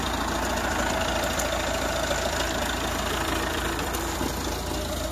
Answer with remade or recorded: recorded